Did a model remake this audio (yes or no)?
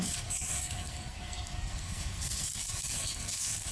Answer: yes